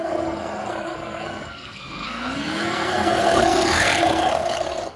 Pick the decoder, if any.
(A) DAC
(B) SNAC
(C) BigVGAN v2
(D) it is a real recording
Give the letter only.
B